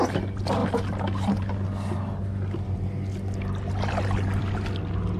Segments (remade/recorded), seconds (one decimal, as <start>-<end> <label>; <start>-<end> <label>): 0.0-5.2 recorded